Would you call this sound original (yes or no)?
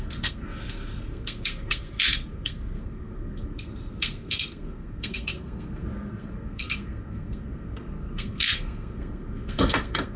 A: no